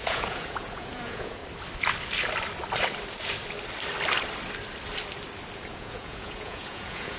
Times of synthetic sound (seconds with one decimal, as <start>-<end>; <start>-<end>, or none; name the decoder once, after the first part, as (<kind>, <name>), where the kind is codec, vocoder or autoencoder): 0.0-1.4 (vocoder, Vocos); 5.7-7.2